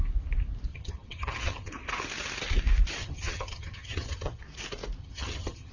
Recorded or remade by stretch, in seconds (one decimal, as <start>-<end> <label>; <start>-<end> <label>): 0.0-0.7 recorded; 0.7-1.7 remade; 1.7-3.0 recorded; 3.0-4.4 remade; 4.4-5.0 recorded; 5.0-5.7 remade